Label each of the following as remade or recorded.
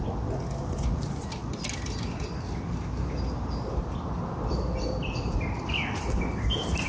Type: recorded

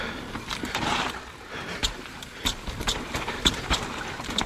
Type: remade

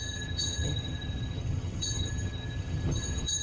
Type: remade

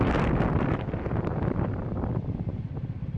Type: recorded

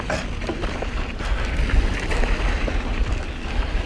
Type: recorded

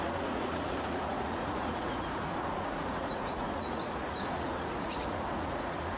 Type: remade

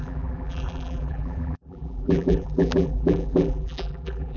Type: remade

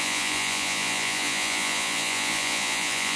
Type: remade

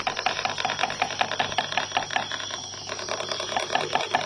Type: recorded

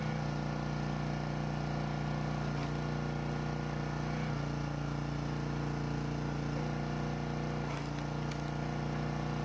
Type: recorded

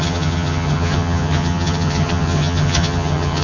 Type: remade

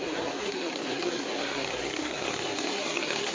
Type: remade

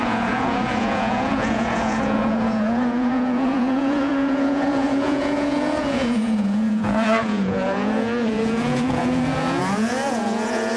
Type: remade